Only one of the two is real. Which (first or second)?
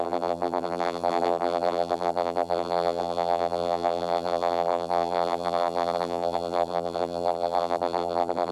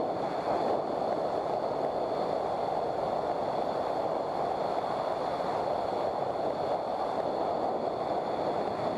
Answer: second